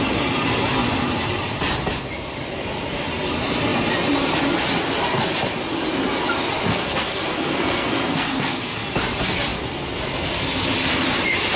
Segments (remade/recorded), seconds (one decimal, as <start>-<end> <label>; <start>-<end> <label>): 0.0-6.7 recorded; 6.7-8.8 remade; 8.8-11.6 recorded